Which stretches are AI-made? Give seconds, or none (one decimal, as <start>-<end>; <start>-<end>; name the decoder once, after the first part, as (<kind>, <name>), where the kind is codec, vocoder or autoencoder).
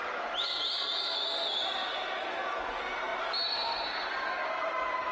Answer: none